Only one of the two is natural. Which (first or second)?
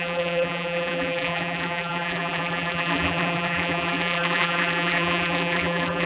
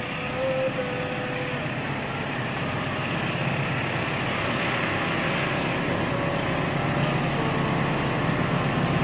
second